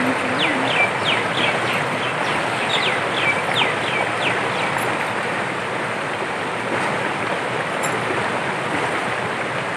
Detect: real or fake real